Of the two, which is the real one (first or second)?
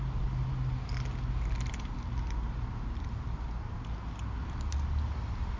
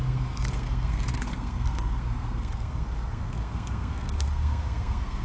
first